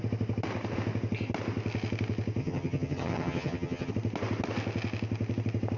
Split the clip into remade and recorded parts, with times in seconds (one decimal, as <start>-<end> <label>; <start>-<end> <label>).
0.0-2.4 recorded; 2.4-3.9 remade; 3.9-5.8 recorded